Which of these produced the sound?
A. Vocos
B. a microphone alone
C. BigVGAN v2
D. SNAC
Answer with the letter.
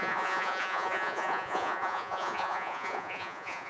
A